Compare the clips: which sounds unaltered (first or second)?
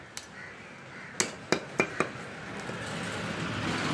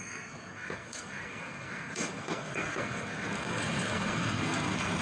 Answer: first